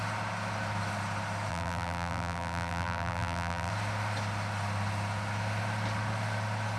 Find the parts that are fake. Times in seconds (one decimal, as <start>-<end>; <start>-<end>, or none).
1.5-3.7